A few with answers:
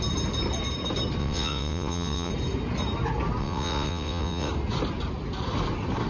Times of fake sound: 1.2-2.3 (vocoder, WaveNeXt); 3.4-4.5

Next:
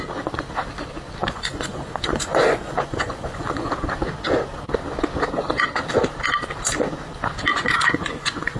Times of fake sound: 1.2-3.7 (vocoder, Vocos); 7.5-8.6